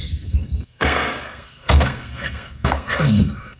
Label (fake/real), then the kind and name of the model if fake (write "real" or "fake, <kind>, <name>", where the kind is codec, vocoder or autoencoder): fake, codec, SNAC